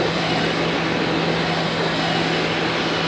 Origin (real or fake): real